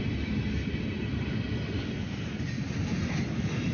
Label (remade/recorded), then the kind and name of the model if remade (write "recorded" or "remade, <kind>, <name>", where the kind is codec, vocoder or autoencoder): recorded